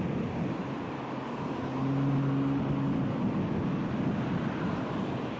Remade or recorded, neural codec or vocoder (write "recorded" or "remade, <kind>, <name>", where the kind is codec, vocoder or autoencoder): recorded